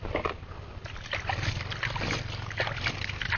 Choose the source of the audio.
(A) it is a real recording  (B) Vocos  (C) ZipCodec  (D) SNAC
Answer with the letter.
A